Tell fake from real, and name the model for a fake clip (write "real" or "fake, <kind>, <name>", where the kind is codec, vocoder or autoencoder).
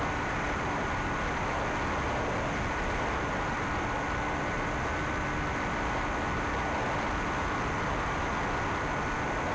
real